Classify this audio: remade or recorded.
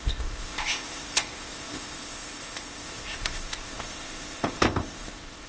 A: remade